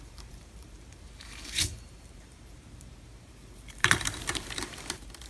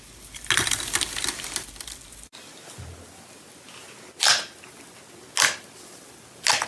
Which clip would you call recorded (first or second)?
second